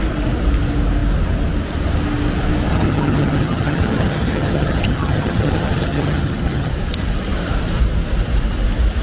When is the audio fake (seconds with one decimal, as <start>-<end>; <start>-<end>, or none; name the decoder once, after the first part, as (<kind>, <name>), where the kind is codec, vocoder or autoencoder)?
2.7-6.7 (vocoder, HiFi-GAN)